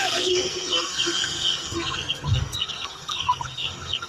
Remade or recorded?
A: remade